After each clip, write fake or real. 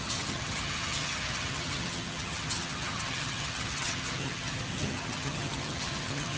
fake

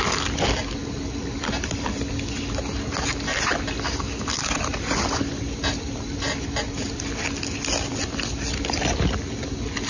real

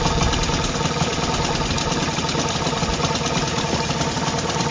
real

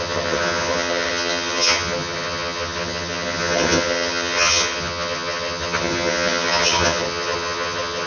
fake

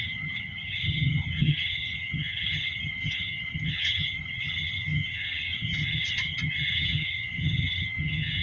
fake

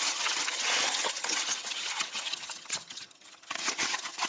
fake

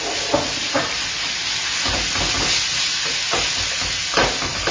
real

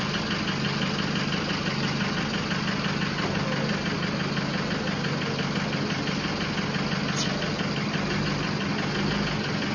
real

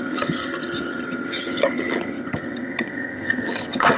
fake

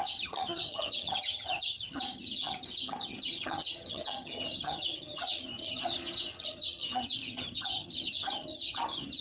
fake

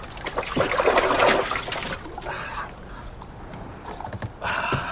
real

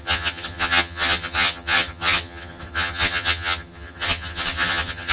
fake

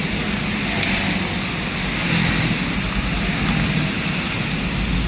real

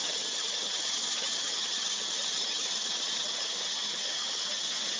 fake